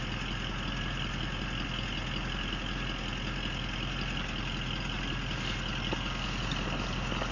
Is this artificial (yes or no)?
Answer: no